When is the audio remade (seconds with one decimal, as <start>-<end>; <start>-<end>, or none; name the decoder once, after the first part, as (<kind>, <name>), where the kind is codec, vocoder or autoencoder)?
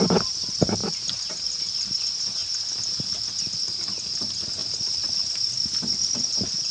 0.8-2.0 (vocoder, BigVGAN v2)